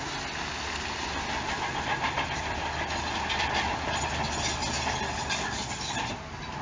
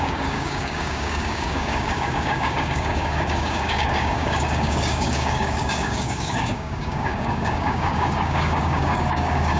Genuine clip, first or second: first